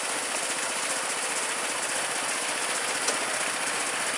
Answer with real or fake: real